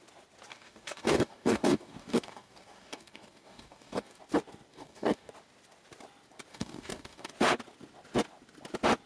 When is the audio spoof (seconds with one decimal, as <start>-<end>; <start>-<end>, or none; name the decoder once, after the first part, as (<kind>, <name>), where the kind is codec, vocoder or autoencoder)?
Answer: 0.5-4.2 (codec, DAC); 4.7-5.3; 6.5-7.3